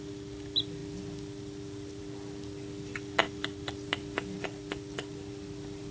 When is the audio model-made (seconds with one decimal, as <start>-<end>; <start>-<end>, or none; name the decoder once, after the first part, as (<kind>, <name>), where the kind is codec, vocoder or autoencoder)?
none